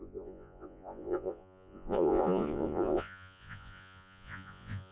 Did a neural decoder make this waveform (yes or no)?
yes